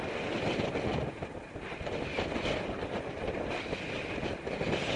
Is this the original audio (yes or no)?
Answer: yes